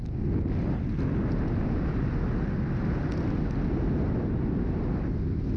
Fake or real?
real